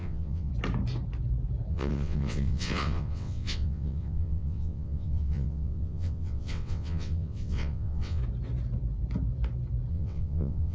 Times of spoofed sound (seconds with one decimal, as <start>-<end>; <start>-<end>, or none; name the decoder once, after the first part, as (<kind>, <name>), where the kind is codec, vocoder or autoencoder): 0.0-0.5 (vocoder, WaveNeXt); 1.7-8.2; 9.9-10.7

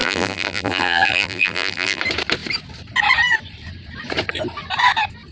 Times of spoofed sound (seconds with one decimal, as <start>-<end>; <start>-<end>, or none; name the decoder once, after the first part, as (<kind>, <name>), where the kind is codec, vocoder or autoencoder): 0.0-2.0 (vocoder, BigVGAN v2)

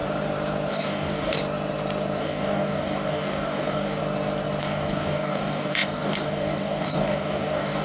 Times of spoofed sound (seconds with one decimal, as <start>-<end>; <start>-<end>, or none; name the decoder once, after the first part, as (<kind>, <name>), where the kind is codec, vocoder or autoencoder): 0.7-1.4 (codec, DAC); 2.2-4.0; 4.6-7.8

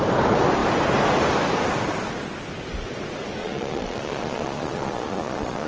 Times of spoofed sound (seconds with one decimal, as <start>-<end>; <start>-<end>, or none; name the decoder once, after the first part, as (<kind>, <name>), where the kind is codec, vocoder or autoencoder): 3.4-5.7 (vocoder, Vocos)